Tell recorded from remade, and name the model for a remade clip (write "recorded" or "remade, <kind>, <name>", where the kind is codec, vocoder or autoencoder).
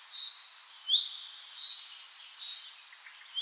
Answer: recorded